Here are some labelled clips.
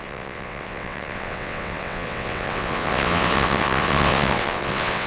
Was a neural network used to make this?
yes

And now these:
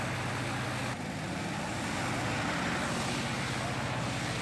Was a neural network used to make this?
no